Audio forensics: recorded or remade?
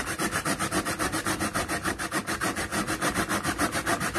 recorded